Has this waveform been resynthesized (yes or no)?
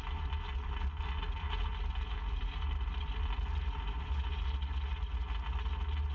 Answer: no